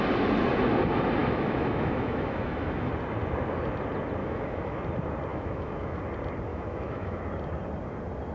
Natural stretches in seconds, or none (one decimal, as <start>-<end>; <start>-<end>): 0.0-1.2; 2.9-4.2; 4.8-5.3; 6.0-6.5; 7.2-8.3